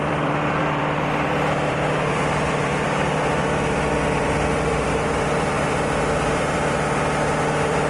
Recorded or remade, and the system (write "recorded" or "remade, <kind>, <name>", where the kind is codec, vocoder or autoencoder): remade, vocoder, BigVGAN v2